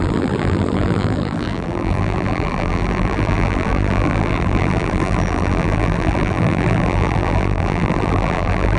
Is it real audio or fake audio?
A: fake